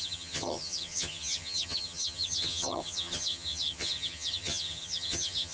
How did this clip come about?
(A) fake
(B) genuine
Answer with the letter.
A